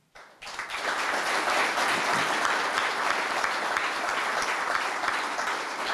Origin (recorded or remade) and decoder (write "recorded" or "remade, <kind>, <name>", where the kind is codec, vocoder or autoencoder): recorded